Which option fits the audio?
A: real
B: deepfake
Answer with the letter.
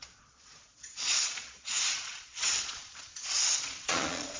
B